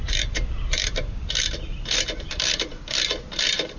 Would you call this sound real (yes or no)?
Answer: no